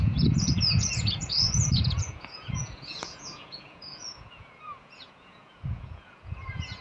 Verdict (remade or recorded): remade